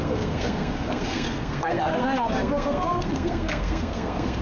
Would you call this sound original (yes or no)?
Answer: no